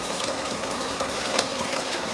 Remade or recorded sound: remade